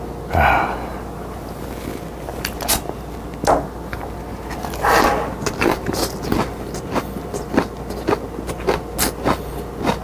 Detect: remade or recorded recorded